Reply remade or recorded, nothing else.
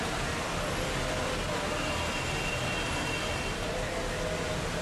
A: recorded